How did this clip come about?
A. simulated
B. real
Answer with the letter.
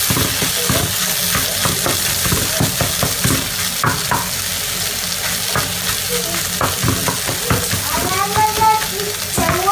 B